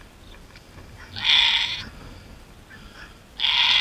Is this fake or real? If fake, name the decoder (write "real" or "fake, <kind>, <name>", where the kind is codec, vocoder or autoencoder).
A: real